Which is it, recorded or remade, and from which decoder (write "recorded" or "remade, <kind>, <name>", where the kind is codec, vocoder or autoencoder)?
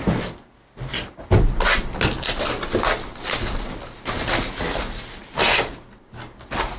recorded